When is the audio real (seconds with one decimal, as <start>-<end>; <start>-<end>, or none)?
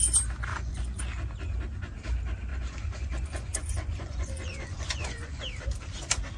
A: 0.0-0.5; 1.0-2.5; 5.4-6.4